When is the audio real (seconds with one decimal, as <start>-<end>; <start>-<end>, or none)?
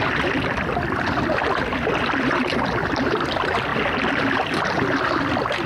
1.7-2.5